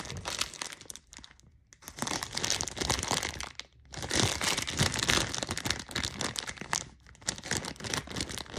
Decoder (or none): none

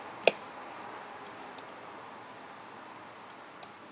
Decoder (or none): none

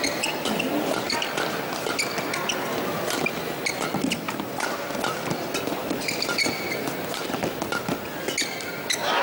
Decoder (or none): none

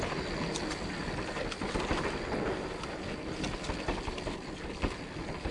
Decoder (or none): none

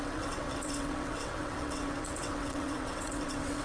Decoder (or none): vocoder, WaveNeXt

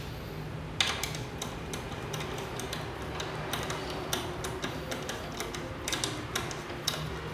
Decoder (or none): none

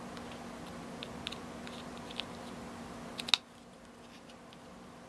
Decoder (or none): none